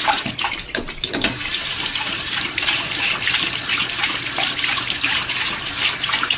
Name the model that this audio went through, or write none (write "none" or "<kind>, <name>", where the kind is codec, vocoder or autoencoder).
vocoder, BigVGAN v2